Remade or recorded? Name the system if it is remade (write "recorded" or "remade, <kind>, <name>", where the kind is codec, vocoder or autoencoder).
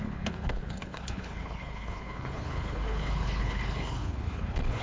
remade, codec, HILCodec